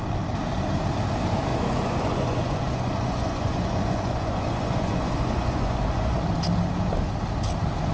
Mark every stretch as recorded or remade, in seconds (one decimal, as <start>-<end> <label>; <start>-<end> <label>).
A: 0.0-1.5 recorded; 1.5-6.2 remade; 6.2-7.9 recorded